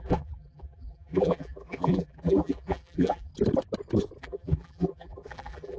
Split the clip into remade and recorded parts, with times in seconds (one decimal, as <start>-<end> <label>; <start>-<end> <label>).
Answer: 0.0-3.3 remade; 3.3-4.2 recorded; 4.2-5.8 remade